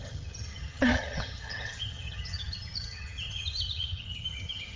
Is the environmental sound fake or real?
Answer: fake